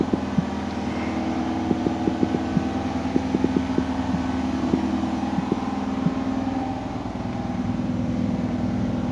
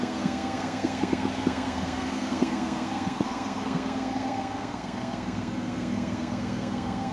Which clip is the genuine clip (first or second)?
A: first